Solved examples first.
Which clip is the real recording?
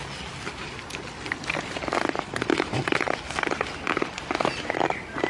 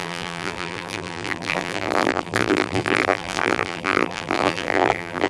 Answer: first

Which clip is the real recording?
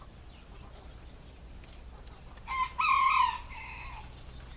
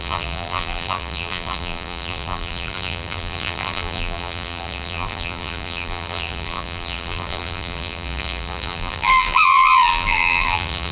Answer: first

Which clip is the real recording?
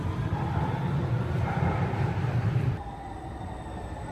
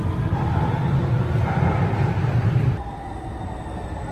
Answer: second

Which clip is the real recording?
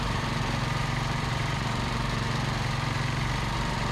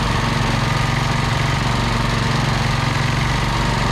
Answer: second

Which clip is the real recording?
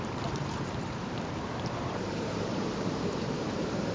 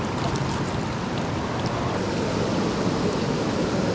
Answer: second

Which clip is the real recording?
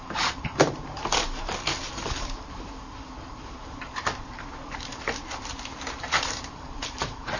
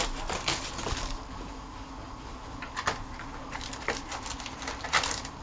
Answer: second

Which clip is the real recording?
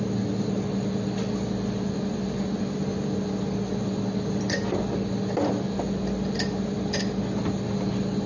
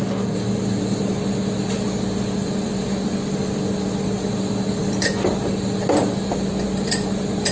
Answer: first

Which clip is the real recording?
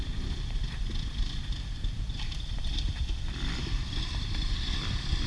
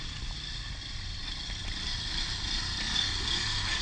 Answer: second